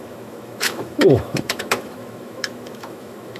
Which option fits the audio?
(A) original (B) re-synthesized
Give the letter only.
B